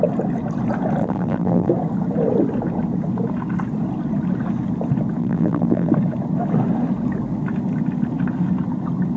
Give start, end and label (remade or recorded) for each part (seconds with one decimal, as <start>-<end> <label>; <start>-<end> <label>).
0.0-1.0 recorded; 1.0-1.7 remade; 1.7-5.2 recorded; 5.2-5.9 remade; 5.9-9.2 recorded